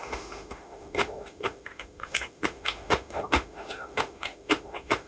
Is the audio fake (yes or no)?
yes